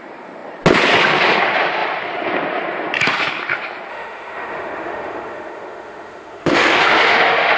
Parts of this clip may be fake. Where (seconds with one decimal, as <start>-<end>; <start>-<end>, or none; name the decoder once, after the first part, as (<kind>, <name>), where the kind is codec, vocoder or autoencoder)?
3.9-7.6 (autoencoder, DAC-VAE)